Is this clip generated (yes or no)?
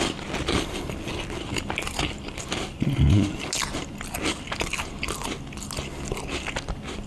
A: no